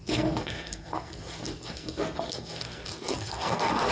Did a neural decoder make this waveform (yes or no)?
yes